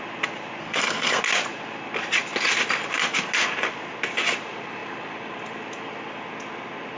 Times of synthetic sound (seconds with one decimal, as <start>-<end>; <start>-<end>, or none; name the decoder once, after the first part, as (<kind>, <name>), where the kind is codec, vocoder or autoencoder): 0.6-1.2 (codec, SNAC)